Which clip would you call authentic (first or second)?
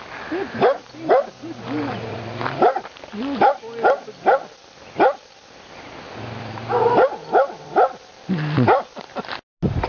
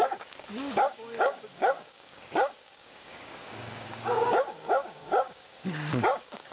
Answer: first